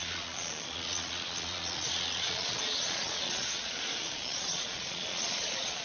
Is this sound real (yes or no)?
no